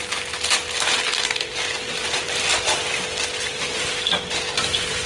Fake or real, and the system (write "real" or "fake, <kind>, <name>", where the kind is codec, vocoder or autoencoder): real